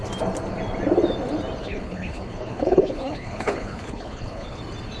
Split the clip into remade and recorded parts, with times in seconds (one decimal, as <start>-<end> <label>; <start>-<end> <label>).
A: 0.0-1.6 recorded; 1.6-4.6 remade; 4.6-5.0 recorded